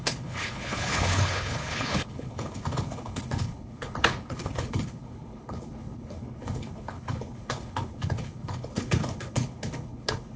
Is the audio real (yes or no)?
no